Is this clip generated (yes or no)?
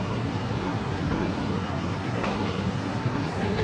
yes